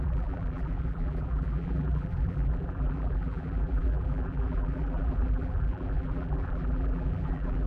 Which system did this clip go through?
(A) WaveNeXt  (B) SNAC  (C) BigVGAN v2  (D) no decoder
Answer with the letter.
C